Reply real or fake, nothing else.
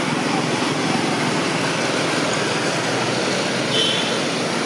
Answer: real